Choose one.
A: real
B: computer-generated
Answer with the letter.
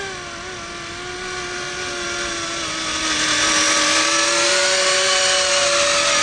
A